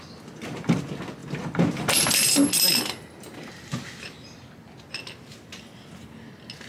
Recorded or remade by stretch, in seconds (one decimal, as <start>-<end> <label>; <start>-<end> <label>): 0.0-6.7 recorded